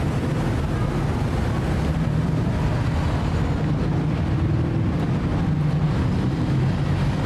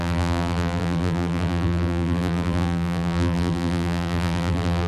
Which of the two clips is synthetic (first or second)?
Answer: second